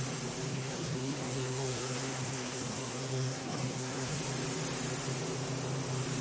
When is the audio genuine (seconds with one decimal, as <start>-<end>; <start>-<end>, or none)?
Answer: 0.0-0.5; 4.2-6.2